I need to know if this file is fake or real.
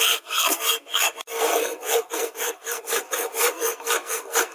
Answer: fake